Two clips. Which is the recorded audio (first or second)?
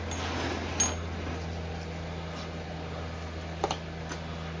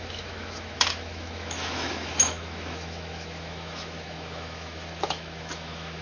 first